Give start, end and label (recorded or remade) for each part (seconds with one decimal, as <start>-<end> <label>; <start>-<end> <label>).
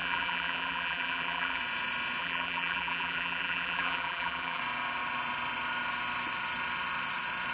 0.0-1.6 remade; 1.6-2.2 recorded; 2.2-4.6 remade; 4.6-7.5 recorded